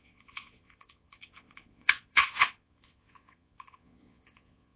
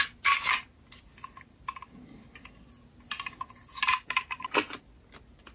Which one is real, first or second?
second